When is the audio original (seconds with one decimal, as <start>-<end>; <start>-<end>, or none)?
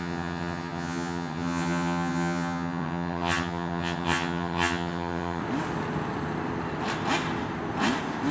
5.4-8.3